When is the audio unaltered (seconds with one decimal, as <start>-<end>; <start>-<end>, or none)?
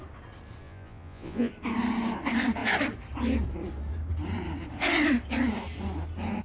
0.0-0.6; 1.5-6.4